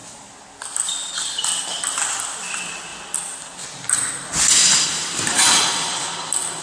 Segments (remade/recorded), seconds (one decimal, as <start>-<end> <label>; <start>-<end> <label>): 0.0-6.6 recorded